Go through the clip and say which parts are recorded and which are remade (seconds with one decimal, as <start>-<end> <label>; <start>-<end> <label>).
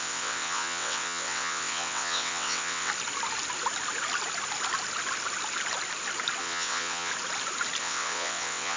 0.0-2.9 remade; 2.9-6.4 recorded; 6.4-7.1 remade; 7.1-7.8 recorded; 7.8-8.8 remade